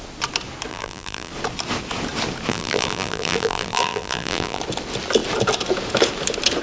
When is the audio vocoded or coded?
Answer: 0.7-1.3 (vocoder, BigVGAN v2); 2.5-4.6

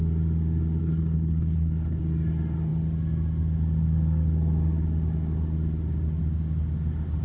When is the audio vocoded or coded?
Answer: 0.8-2.0 (codec, HILCodec)

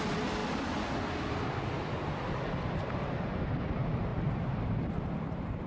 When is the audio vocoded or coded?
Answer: none

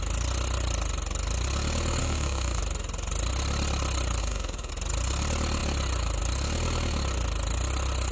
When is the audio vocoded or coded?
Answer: 2.0-2.6 (autoencoder, DAC-VAE); 4.2-4.7

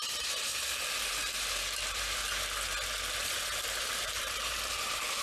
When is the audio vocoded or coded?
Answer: 0.0-0.5 (vocoder, BigVGAN v2); 1.1-2.2; 3.6-5.2

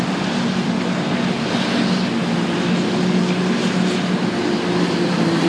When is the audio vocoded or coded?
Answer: none